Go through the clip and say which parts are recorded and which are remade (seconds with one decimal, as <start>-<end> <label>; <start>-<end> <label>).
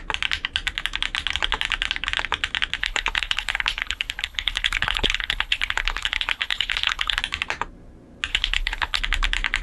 0.0-2.8 recorded; 2.8-7.2 remade; 7.2-8.3 recorded; 8.3-9.0 remade; 9.0-9.6 recorded